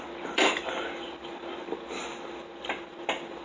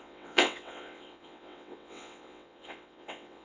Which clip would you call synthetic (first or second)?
second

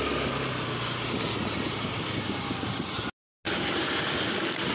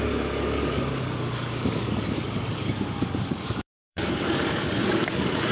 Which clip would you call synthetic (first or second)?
second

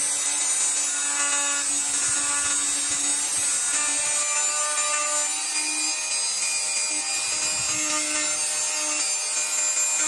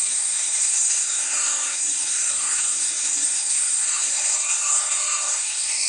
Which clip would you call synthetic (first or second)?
second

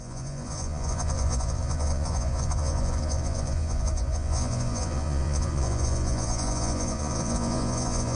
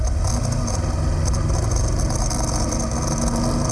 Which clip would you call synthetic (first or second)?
first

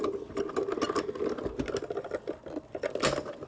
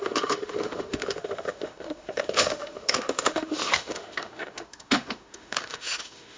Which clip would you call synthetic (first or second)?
second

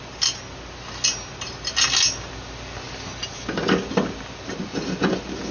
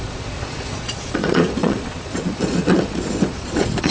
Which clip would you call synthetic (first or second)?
second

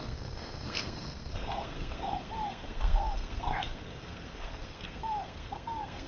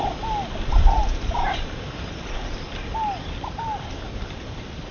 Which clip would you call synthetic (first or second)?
first